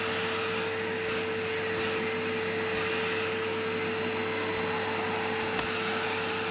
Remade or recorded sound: recorded